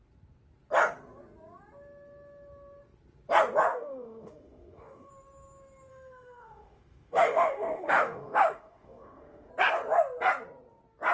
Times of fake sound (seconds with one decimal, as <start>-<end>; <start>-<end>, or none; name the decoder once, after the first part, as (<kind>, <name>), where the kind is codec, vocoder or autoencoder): 3.7-5.1 (autoencoder, DAC-VAE); 5.9-9.5